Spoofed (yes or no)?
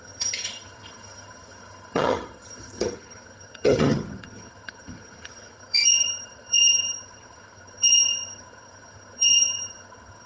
yes